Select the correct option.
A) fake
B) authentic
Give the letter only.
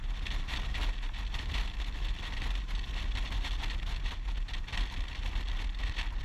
B